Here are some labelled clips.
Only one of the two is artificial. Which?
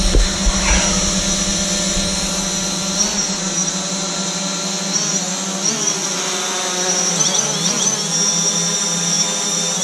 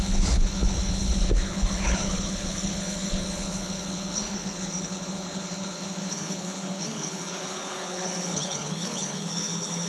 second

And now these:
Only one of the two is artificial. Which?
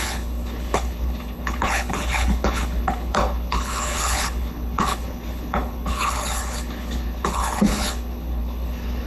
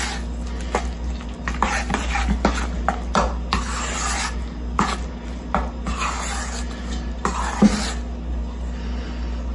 first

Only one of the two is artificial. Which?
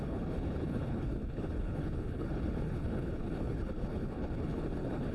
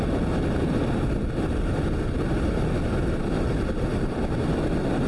first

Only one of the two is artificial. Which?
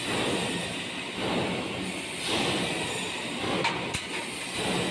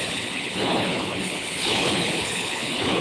second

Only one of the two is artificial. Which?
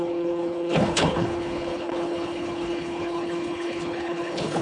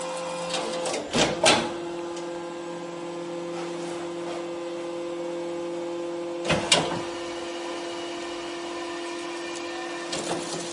first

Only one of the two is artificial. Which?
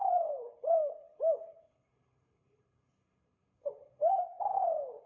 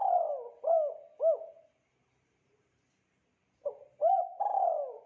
first